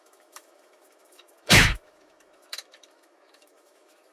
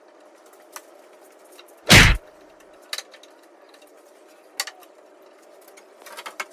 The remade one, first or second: first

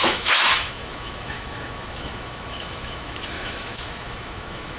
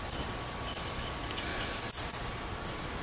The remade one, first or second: first